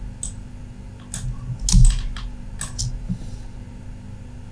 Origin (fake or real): real